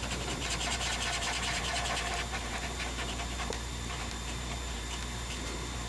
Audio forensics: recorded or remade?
remade